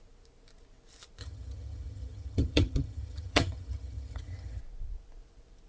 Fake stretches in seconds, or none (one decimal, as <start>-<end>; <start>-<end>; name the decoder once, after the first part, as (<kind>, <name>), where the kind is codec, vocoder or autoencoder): 1.2-4.6 (vocoder, HiFi-GAN)